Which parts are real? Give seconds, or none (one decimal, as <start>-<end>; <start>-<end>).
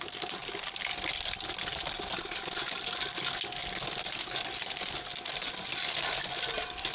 0.0-6.9